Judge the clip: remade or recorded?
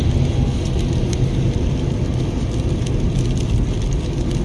recorded